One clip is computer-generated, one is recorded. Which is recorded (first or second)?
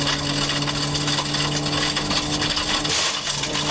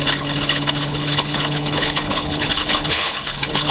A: first